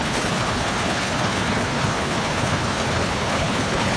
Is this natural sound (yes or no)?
no